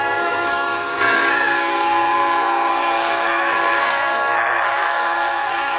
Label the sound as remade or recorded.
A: remade